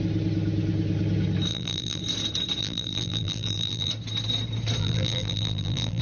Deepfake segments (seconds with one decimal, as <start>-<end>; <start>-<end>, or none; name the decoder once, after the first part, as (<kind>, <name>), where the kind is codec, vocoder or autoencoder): 1.5-2.0 (vocoder, BigVGAN v2); 2.6-3.9; 4.8-6.0